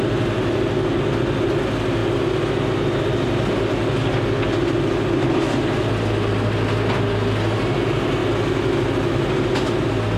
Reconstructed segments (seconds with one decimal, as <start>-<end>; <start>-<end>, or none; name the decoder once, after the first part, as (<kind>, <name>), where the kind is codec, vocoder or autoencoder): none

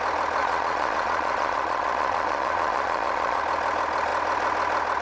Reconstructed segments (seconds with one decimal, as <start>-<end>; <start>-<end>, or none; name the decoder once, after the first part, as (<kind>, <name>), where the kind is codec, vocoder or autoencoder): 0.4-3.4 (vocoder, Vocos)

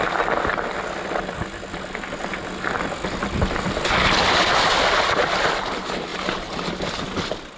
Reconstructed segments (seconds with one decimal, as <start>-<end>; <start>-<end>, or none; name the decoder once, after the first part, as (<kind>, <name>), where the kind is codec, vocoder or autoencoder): none

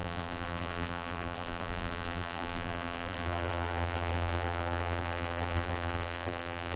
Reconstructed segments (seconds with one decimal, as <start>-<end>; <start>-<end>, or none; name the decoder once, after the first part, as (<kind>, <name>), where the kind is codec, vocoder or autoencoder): 0.0-6.8 (vocoder, BigVGAN v2)